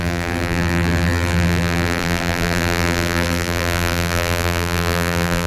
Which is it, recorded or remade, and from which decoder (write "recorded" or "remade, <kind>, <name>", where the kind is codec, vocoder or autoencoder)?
remade, vocoder, BigVGAN v2